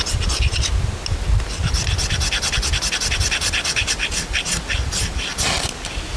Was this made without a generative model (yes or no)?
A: yes